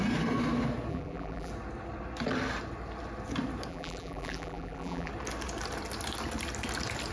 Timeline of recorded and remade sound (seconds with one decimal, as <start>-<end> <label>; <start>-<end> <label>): 0.0-0.9 recorded; 0.9-1.5 remade; 1.5-3.7 recorded; 3.7-5.1 remade; 5.1-7.1 recorded

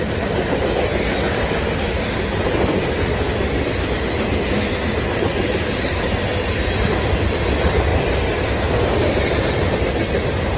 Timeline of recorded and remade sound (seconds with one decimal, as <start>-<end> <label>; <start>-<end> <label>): 0.0-10.6 recorded

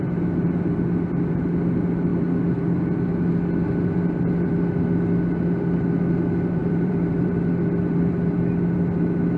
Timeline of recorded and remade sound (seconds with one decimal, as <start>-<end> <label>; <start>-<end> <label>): 0.0-6.6 recorded; 6.6-7.4 remade; 7.4-9.4 recorded

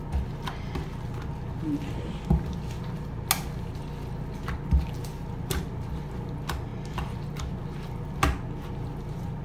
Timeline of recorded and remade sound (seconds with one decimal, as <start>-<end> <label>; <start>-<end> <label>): 0.0-9.4 recorded

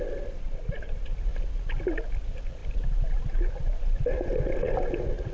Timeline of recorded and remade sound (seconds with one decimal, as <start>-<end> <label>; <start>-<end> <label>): 0.0-5.3 recorded

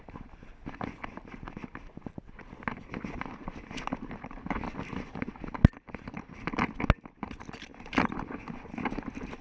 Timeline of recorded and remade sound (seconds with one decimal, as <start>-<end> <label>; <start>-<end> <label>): 0.0-9.4 recorded